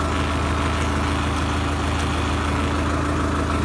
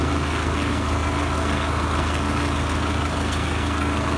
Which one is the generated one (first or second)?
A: second